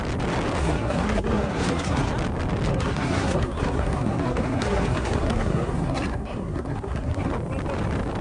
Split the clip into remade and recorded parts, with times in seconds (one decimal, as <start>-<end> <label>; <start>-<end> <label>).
0.0-0.6 recorded; 0.6-2.1 remade; 2.1-2.7 recorded; 2.7-7.3 remade; 7.3-8.2 recorded